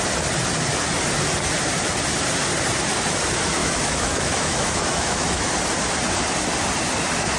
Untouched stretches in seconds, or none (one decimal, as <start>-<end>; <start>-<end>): 0.0-3.6; 5.5-7.4